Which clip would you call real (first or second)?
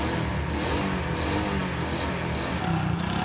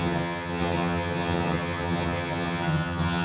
first